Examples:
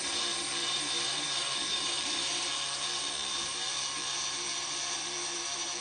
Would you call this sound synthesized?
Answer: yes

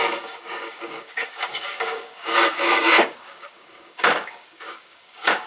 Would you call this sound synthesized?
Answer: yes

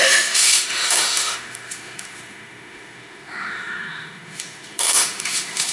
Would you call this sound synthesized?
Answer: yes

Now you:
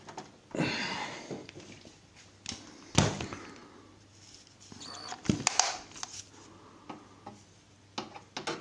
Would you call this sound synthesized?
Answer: no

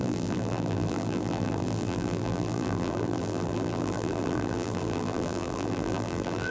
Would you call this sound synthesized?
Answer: yes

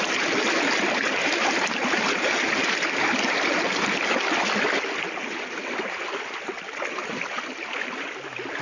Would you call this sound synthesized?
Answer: no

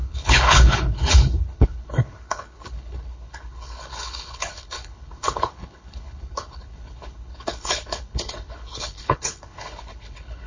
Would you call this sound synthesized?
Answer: yes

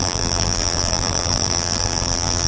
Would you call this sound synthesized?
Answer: yes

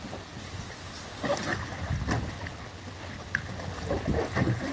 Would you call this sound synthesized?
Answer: no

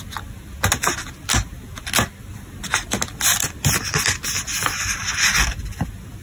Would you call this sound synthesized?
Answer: no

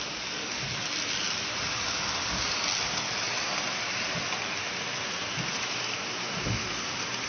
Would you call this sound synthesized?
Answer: no